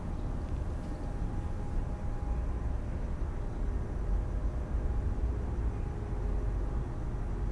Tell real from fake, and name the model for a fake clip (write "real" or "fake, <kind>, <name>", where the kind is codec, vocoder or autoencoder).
real